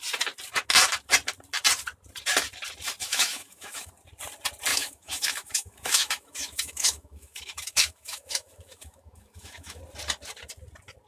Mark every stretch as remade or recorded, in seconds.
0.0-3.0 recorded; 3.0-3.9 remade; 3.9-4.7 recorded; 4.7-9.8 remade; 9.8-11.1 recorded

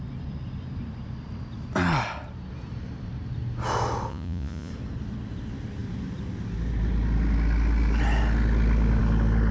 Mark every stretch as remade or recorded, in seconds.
0.0-4.1 recorded; 4.1-4.7 remade; 4.7-9.5 recorded

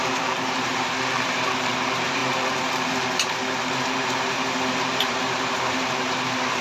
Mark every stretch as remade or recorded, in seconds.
0.0-6.6 remade

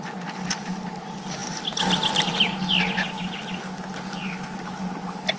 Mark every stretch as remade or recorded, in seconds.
0.0-5.4 recorded

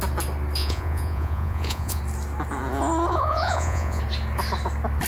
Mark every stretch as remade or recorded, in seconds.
0.0-0.6 recorded; 0.6-2.0 remade; 2.0-3.1 recorded; 3.1-4.0 remade; 4.0-5.1 recorded

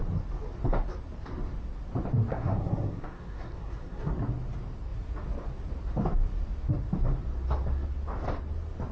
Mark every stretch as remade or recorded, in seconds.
0.0-2.3 recorded; 2.3-4.1 remade; 4.1-8.9 recorded

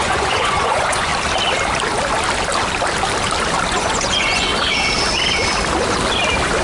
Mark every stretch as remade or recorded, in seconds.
0.0-1.1 remade; 1.1-3.7 recorded; 3.7-4.5 remade; 4.5-6.6 recorded

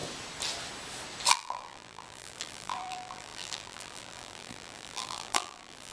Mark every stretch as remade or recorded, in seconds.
0.0-1.3 recorded; 1.3-5.9 remade